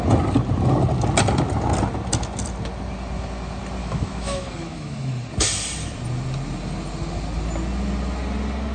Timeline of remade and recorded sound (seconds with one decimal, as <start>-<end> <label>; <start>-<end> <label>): 0.0-3.8 recorded; 3.8-5.1 remade; 5.1-8.7 recorded